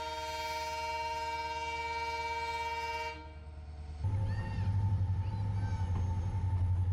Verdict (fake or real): real